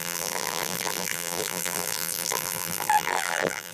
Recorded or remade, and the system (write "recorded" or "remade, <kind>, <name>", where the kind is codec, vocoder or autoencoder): remade, vocoder, BigVGAN v2